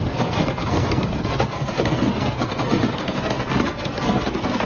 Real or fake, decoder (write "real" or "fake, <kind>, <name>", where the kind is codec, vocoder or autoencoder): fake, codec, SNAC